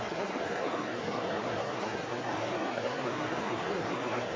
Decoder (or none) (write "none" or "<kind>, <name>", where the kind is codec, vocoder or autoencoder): codec, SNAC